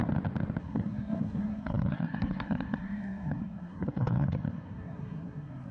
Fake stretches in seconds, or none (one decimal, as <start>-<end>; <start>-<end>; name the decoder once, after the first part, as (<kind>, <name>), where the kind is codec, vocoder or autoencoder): 0.6-5.7 (codec, SNAC)